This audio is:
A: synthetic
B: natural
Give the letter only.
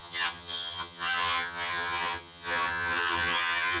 A